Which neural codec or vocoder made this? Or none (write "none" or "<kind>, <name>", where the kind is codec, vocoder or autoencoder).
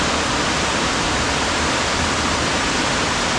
none